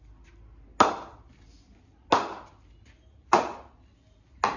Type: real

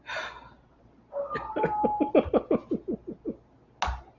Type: real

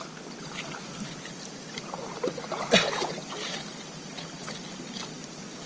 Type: real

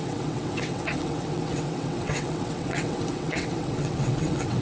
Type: fake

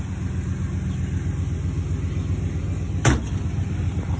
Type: real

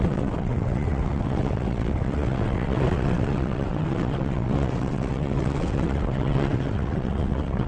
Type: fake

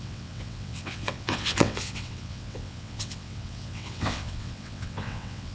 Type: fake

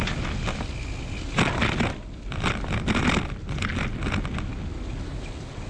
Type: real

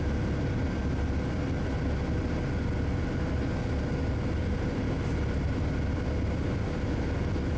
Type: real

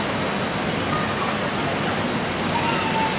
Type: real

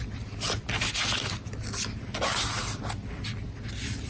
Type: real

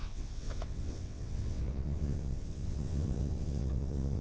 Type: fake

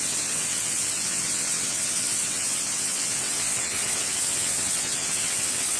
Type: fake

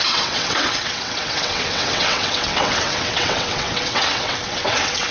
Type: fake